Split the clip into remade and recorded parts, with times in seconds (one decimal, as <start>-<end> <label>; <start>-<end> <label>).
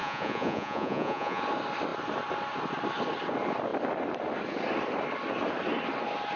0.0-1.4 remade; 1.4-6.4 recorded